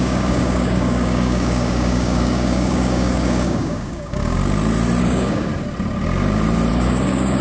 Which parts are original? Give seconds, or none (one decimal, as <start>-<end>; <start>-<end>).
4.4-5.0; 5.5-6.7